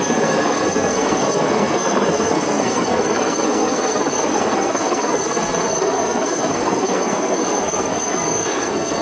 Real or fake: fake